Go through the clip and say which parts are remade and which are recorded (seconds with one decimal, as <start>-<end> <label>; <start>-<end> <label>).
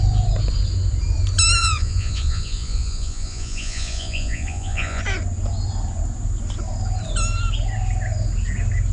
0.0-1.6 recorded; 1.6-5.0 remade; 5.0-8.9 recorded